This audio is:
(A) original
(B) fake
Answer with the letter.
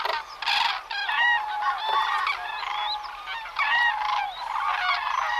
A